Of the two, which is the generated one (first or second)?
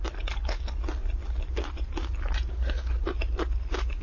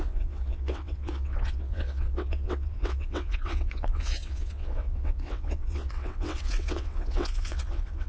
second